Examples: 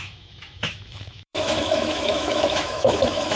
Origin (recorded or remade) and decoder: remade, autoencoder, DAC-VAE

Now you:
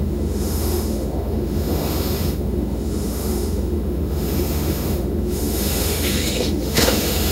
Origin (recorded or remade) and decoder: remade, autoencoder, DAC-VAE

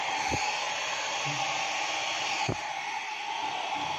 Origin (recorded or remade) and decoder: recorded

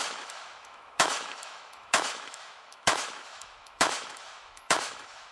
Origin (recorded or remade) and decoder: remade, autoencoder, DAC-VAE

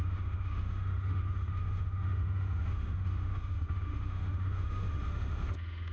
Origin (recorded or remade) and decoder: remade, autoencoder, DAC-VAE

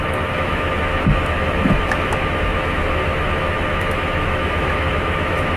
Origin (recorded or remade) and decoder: remade, autoencoder, DAC-VAE